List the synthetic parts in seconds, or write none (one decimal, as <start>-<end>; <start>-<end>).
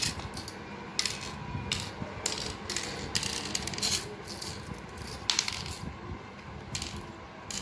none